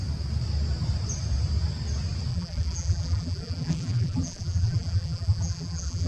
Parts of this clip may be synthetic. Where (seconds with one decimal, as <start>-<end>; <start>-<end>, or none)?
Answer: 2.3-6.1

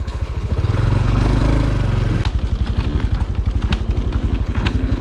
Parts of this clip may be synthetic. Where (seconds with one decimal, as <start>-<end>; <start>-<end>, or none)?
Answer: 0.0-1.4; 4.4-5.0